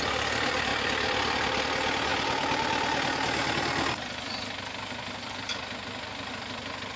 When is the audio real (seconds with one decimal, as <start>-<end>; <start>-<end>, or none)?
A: 0.0-7.0